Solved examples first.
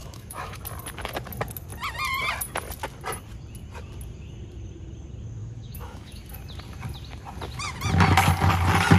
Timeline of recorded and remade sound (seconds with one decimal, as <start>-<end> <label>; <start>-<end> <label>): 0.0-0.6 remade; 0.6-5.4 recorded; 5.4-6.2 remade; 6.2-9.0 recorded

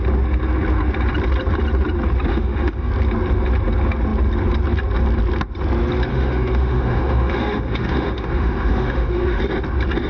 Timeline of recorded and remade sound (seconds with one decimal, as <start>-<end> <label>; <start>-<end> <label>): 0.0-2.3 recorded; 2.3-2.9 remade; 2.9-6.1 recorded; 6.1-9.4 remade; 9.4-10.1 recorded

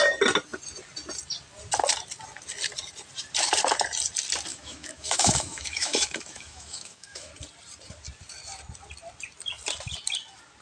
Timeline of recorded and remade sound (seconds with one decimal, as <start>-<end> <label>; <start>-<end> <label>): 0.0-4.5 recorded; 4.5-7.3 remade; 7.3-10.6 recorded

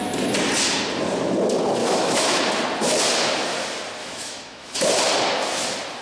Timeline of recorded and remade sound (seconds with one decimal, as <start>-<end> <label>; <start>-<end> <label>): 0.0-1.8 recorded; 1.8-2.4 remade; 2.4-4.0 recorded; 4.0-4.9 remade; 4.9-6.0 recorded

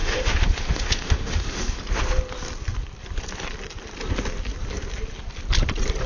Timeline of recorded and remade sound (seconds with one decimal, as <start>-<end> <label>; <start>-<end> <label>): 0.0-1.8 remade; 1.8-6.1 recorded